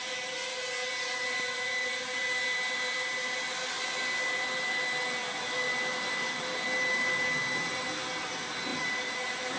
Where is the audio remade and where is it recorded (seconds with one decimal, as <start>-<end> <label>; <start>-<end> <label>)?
0.0-0.8 recorded; 0.8-3.0 remade; 3.0-8.7 recorded; 8.7-9.6 remade